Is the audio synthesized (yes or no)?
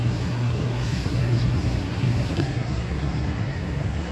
yes